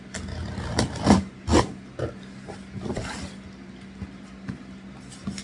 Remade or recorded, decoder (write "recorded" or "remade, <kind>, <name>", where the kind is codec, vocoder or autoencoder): recorded